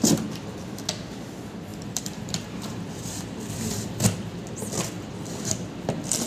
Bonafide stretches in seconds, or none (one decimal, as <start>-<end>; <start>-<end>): 0.0-1.7; 5.5-6.3